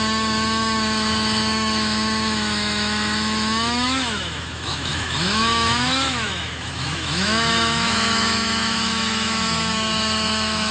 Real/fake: fake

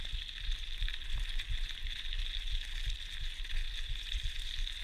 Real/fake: real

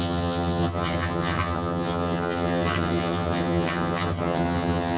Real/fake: fake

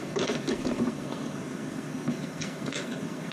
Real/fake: fake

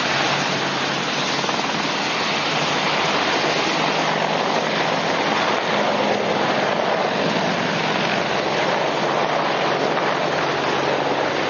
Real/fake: real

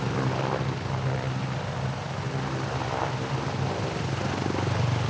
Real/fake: real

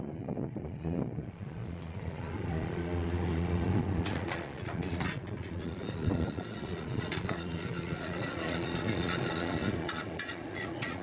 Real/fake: fake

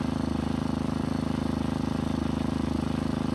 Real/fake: real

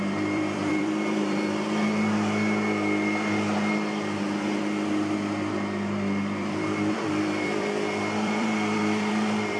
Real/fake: fake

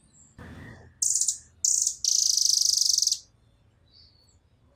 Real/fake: real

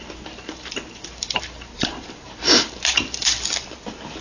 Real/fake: fake